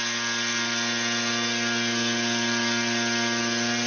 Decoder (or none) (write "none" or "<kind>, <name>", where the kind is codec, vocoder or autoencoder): none